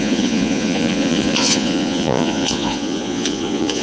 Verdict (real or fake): fake